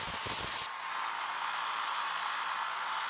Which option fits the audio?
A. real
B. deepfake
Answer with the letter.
A